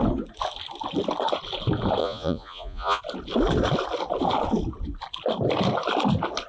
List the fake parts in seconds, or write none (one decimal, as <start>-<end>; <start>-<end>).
2.0-3.0